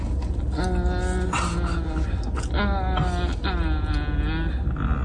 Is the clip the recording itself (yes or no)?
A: yes